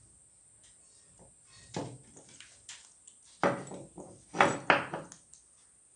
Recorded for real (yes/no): yes